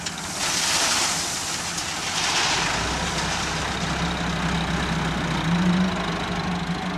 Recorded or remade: recorded